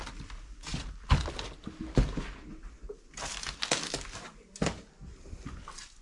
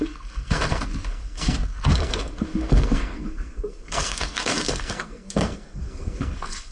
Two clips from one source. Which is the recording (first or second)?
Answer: first